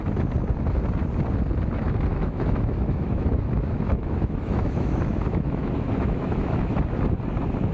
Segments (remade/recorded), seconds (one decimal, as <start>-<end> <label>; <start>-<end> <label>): 0.0-2.1 recorded; 2.1-6.7 remade; 6.7-7.7 recorded